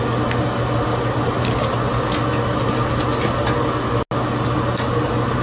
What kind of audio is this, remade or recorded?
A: recorded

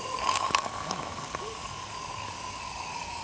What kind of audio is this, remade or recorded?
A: remade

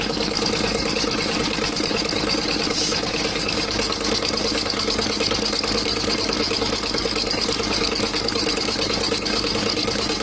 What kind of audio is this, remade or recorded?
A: remade